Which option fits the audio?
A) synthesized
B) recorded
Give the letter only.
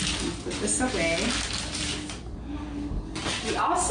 B